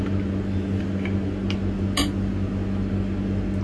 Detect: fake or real real